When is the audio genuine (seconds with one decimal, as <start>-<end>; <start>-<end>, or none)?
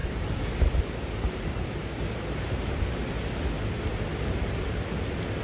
3.2-4.1; 4.7-5.4